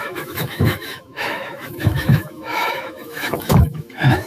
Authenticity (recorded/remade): remade